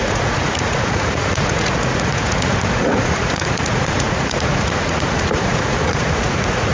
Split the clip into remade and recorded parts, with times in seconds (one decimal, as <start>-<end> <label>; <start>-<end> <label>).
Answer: 0.0-6.7 remade